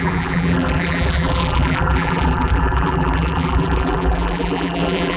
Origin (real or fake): fake